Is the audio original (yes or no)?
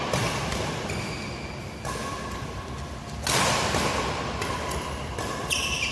yes